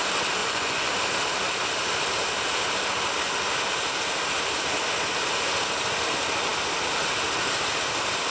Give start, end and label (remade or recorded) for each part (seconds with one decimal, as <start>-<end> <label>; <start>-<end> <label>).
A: 0.0-0.4 recorded; 0.4-0.9 remade; 0.9-8.3 recorded